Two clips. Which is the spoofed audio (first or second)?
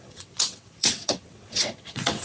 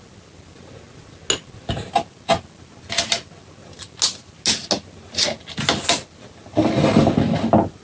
first